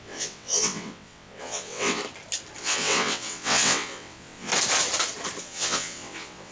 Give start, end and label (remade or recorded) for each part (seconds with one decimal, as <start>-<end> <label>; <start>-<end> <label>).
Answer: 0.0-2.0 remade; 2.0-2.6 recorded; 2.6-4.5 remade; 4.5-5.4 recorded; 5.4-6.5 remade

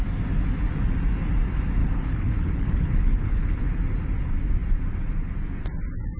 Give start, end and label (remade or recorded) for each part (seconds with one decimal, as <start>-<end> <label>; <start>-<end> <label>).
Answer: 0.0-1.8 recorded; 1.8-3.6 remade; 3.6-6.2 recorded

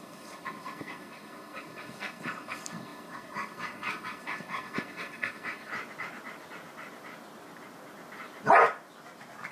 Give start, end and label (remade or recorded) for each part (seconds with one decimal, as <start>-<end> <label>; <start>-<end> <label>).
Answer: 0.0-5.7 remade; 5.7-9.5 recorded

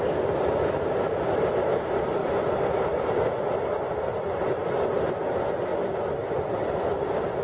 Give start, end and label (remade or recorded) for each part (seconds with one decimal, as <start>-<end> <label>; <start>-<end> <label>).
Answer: 0.0-7.4 recorded

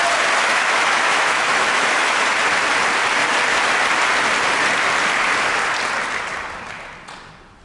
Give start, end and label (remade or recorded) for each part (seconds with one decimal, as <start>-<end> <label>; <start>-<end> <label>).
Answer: 0.0-0.5 recorded; 0.5-2.3 remade; 2.3-7.6 recorded